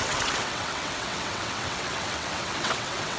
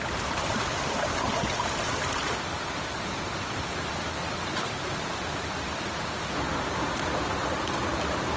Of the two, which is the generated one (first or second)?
first